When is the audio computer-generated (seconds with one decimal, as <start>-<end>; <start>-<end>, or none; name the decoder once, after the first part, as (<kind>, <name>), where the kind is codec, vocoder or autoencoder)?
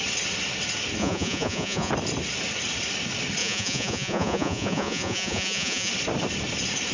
1.0-1.9 (vocoder, Vocos); 3.4-5.9